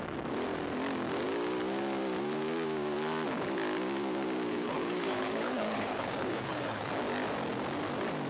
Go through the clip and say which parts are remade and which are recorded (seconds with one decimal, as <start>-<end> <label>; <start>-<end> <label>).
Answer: 0.0-4.5 recorded; 4.5-6.9 remade; 6.9-8.3 recorded